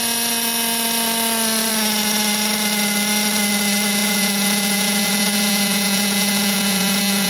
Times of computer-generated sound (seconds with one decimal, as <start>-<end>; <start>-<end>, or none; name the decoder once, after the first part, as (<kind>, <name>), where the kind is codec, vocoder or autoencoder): 4.0-7.3 (vocoder, Vocos)